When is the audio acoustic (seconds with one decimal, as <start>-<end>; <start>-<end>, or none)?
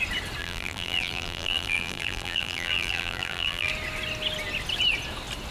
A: 0.0-0.4; 3.7-5.5